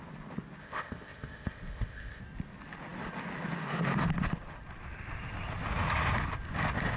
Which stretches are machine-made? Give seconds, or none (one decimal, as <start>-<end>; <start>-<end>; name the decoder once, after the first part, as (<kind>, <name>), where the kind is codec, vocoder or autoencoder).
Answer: 0.6-2.2 (codec, ZipCodec)